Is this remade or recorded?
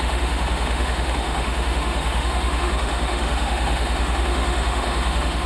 remade